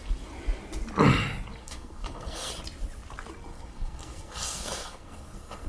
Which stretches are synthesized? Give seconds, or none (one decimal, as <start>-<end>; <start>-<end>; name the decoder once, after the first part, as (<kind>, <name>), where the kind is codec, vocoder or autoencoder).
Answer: 1.6-2.5 (codec, SNAC); 3.5-5.7